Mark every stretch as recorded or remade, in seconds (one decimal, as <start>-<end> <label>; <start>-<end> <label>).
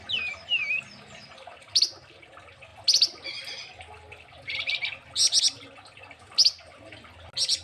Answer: 0.0-7.6 recorded